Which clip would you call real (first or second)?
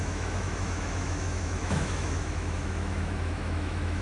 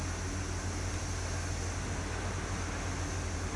second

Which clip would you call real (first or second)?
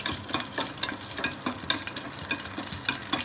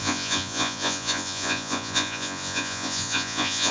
first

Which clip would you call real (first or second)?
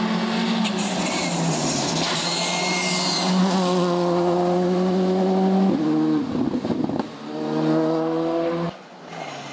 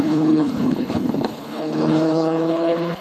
first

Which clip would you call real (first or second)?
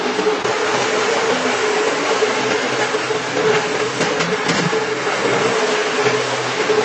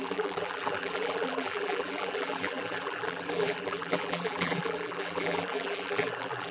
first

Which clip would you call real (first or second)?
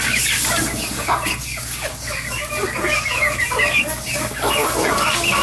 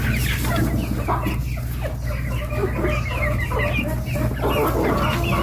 second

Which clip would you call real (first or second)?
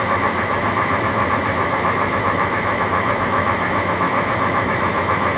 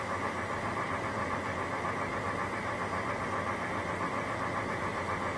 second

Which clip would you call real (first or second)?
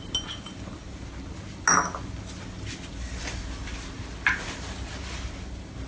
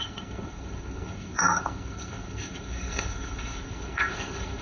first